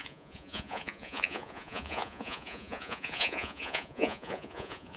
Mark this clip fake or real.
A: fake